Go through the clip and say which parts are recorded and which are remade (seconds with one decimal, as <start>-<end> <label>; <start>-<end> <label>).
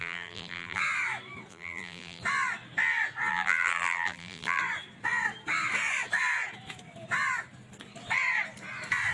0.0-0.8 remade; 0.8-1.5 recorded; 1.5-2.2 remade; 2.2-3.3 recorded; 3.3-4.6 remade; 4.6-9.1 recorded